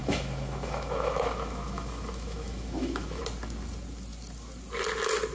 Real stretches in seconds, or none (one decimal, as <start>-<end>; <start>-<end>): 3.2-5.3

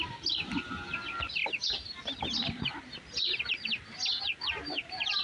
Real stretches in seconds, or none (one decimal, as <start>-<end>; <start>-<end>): 0.0-5.2

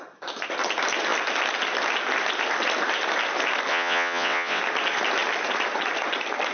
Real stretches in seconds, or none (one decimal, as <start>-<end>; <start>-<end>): 0.0-3.7; 4.6-6.5